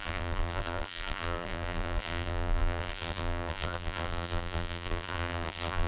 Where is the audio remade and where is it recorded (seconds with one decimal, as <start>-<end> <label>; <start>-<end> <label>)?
0.0-5.9 remade